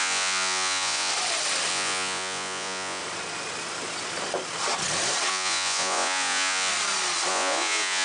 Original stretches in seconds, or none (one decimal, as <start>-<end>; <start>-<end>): 1.1-1.7; 3.0-5.3; 6.7-7.3